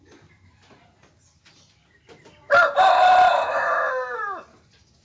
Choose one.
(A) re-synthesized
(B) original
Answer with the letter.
B